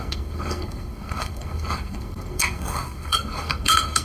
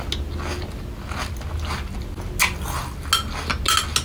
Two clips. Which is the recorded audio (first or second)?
second